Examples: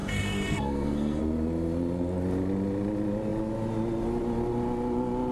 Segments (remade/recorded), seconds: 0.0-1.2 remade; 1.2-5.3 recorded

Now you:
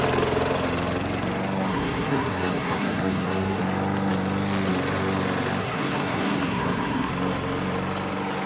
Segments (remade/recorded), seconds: 0.0-1.7 recorded; 1.7-3.6 remade; 3.6-5.6 recorded; 5.6-7.1 remade; 7.1-8.5 recorded